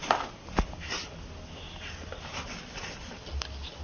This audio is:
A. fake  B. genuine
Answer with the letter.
B